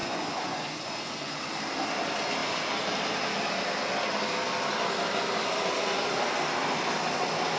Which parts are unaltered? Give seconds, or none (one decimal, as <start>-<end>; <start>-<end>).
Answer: 1.4-7.6